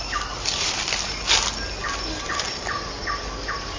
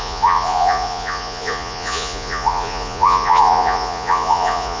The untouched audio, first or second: first